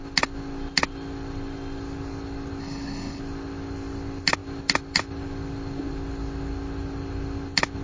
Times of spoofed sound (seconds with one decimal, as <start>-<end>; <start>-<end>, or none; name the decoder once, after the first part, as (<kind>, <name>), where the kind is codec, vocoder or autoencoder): 2.6-3.2 (codec, HILCodec)